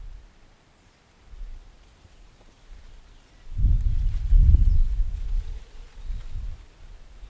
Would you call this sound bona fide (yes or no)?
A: yes